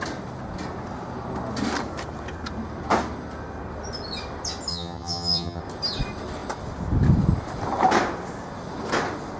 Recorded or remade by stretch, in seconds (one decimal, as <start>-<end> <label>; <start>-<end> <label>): 0.0-4.7 recorded; 4.7-5.6 remade; 5.6-9.4 recorded